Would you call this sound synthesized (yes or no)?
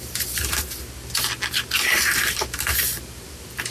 no